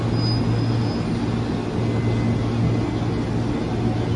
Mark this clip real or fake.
real